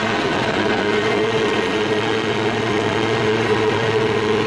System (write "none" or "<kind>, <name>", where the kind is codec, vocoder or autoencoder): vocoder, Vocos